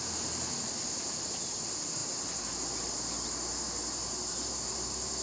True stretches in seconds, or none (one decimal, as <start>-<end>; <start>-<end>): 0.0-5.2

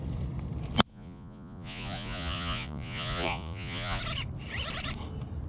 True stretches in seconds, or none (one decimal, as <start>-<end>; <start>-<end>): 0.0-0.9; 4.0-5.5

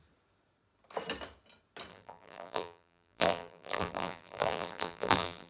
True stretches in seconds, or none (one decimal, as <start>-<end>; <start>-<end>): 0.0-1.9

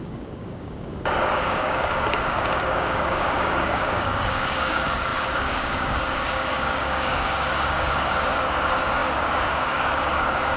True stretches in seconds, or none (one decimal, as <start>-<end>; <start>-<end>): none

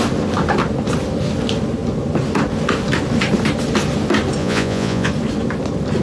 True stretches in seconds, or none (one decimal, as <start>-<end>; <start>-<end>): 0.0-4.4; 5.1-6.0

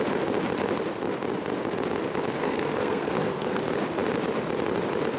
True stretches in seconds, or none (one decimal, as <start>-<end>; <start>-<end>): 0.0-2.4; 3.6-5.2

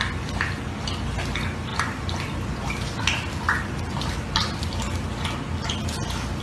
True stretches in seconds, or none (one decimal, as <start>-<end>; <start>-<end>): 0.0-1.7; 5.5-6.4

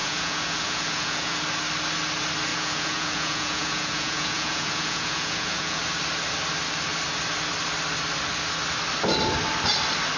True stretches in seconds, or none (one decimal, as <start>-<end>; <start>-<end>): 1.4-2.5; 5.8-10.2